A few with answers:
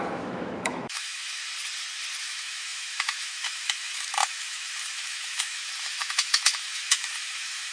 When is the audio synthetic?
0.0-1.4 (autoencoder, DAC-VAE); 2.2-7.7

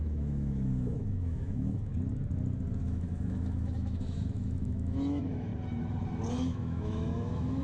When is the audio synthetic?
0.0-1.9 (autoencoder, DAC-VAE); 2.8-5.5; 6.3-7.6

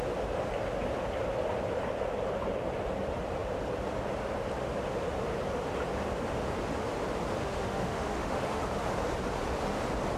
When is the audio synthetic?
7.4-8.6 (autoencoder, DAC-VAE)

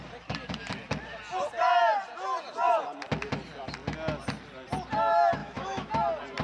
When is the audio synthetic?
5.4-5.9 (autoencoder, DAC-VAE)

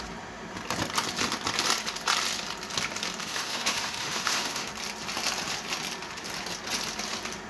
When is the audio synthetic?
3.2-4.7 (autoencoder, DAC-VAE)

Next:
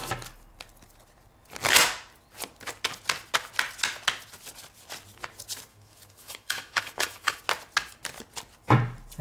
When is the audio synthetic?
5.7-7.4 (autoencoder, DAC-VAE)

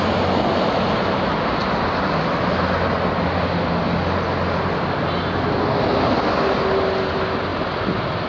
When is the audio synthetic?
none

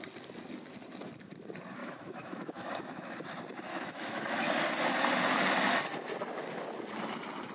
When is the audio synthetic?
1.8-3.1 (autoencoder, DAC-VAE); 3.7-4.4